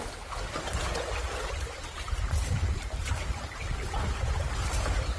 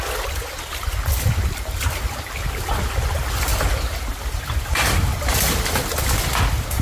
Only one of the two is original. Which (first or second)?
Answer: second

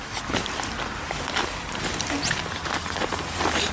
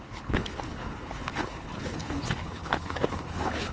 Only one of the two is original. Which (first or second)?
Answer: first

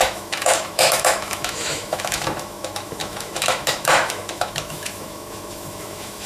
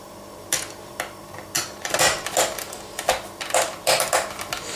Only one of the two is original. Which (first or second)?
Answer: second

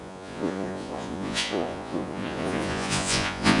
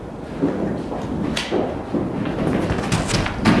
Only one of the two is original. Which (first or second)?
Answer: second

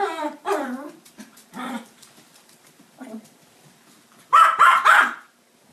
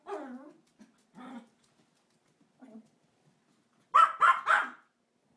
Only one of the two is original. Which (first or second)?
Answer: second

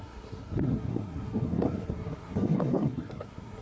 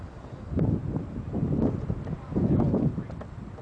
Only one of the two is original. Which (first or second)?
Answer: second